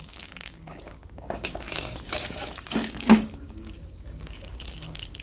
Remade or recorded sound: remade